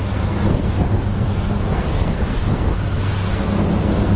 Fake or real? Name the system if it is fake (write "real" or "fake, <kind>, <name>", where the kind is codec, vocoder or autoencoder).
fake, codec, SNAC